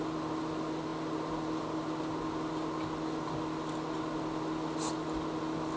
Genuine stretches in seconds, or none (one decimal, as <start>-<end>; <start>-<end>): 0.0-5.8